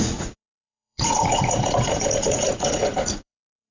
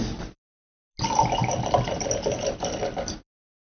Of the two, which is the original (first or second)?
second